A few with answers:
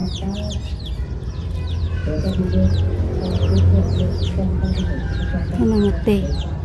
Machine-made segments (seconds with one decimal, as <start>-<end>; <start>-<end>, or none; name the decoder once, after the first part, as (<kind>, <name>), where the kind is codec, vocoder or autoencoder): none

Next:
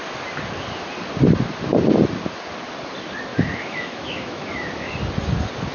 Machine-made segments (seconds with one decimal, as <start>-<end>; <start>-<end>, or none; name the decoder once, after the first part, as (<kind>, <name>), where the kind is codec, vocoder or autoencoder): 3.3-4.9 (autoencoder, DAC-VAE)

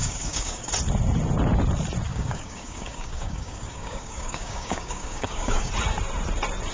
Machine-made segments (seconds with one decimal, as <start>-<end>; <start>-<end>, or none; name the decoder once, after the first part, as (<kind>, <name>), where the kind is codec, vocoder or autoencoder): 0.0-0.7 (codec, DAC); 2.1-5.7

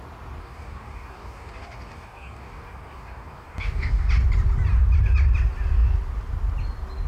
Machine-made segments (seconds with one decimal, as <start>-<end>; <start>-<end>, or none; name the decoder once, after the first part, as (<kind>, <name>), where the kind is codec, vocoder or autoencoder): 0.4-4.1 (codec, DAC)

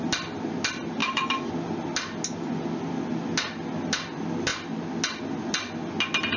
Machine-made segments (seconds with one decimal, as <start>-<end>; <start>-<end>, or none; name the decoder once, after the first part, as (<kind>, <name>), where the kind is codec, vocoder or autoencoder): 1.0-1.5 (autoencoder, DAC-VAE)